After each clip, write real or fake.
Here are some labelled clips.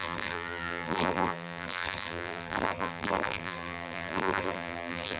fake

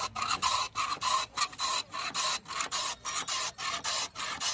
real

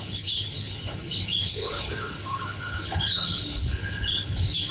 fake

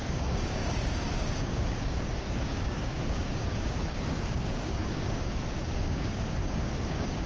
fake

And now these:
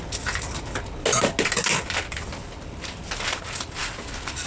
real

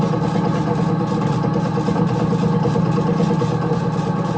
real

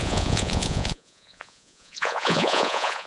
fake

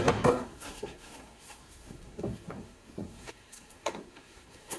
fake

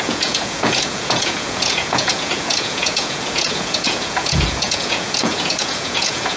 fake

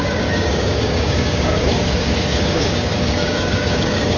fake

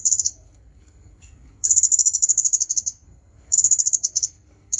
fake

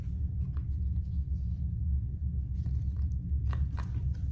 real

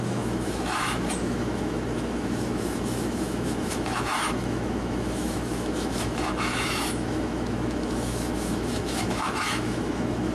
fake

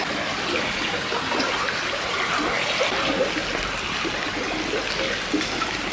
real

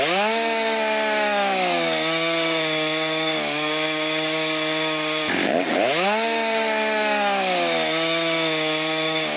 fake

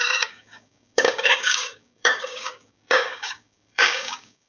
fake